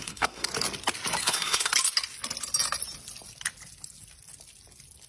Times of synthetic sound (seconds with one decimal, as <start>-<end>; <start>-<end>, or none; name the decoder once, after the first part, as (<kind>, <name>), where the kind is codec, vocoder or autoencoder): 0.0-0.5 (codec, SNAC); 1.2-1.7

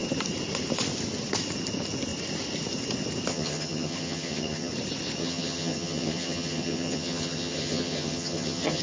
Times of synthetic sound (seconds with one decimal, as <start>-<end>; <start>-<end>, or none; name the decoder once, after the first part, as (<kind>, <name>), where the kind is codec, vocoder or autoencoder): 3.3-4.7 (vocoder, HiFi-GAN); 5.2-8.8

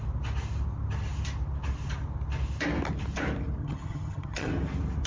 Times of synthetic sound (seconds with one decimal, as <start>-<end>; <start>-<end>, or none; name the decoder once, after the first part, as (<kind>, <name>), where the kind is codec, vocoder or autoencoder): 3.6-4.5 (vocoder, HiFi-GAN)

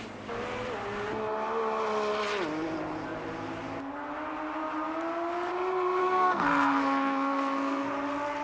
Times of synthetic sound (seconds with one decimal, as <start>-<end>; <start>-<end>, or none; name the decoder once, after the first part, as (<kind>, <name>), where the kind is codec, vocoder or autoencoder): 6.0-7.9 (codec, SNAC)

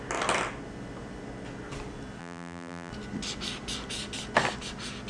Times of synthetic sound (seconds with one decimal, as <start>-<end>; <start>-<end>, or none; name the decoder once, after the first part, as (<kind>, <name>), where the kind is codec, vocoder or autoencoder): 2.2-2.9 (vocoder, BigVGAN v2)

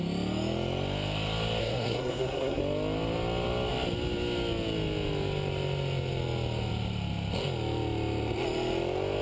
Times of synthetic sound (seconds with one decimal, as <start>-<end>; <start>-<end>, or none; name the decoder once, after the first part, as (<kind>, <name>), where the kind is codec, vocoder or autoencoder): 1.6-2.6 (codec, SNAC)

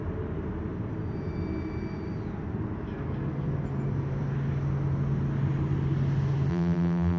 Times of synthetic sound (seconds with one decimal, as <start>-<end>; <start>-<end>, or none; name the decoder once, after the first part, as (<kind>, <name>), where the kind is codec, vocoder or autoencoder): 6.5-7.2 (vocoder, BigVGAN v2)

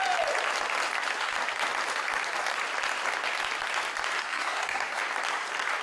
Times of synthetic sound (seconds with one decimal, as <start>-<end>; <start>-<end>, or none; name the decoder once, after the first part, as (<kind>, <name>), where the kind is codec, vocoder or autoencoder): 4.2-5.0 (codec, SNAC)